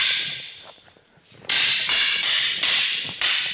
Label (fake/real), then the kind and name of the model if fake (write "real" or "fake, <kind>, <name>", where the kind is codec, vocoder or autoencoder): fake, vocoder, BigVGAN v2